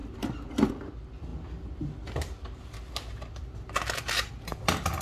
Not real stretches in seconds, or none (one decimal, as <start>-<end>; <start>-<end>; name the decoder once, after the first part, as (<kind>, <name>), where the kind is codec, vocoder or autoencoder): none